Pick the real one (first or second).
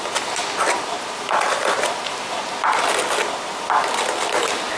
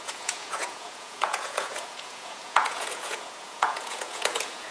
first